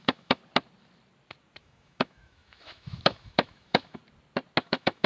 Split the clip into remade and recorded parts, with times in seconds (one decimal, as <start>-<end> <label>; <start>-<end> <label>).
0.0-0.4 remade; 0.4-1.6 recorded; 1.6-4.0 remade; 4.0-4.6 recorded; 4.6-5.1 remade